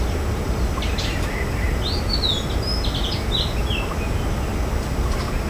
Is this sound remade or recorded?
recorded